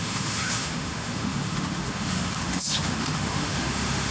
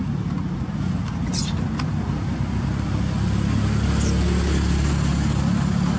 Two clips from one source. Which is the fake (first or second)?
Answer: first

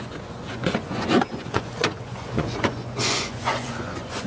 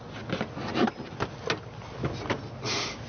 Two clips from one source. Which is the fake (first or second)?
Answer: first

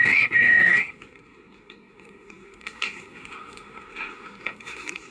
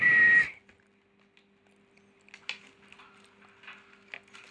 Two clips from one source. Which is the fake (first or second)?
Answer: first